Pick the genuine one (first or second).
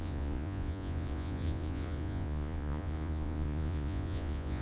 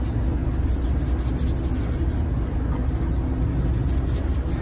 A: second